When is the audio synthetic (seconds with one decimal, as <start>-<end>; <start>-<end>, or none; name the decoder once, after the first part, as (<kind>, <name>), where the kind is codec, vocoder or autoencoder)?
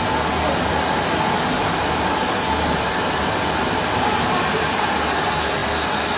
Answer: none